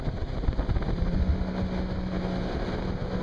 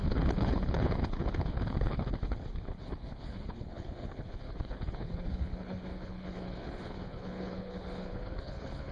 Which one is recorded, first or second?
first